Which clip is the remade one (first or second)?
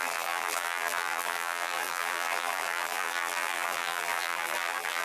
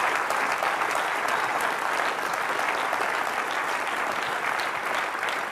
first